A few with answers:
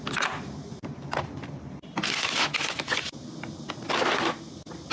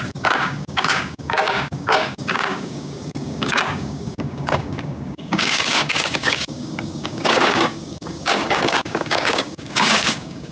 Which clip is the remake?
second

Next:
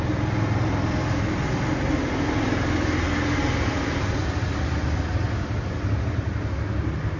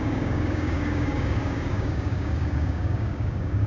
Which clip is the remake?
second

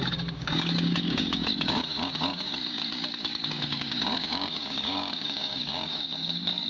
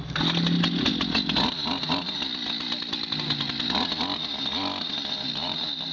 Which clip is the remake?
first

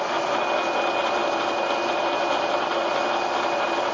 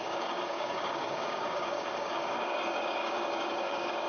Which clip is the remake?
second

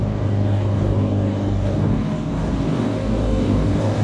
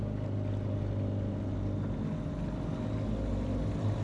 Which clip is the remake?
first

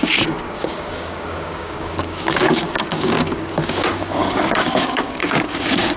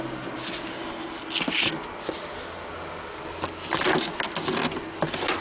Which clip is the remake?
first